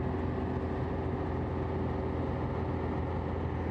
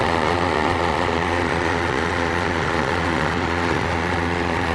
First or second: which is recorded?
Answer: first